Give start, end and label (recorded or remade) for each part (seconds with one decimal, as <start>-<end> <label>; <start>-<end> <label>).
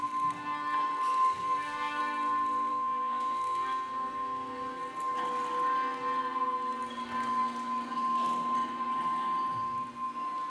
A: 0.0-1.4 recorded; 1.4-2.0 remade; 2.0-2.7 recorded; 2.7-4.8 remade; 4.8-10.5 recorded